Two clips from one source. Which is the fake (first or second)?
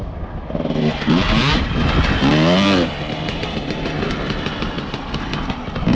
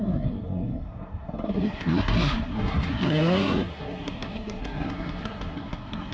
second